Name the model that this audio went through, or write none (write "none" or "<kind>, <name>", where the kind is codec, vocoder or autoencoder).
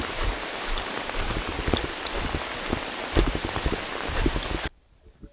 none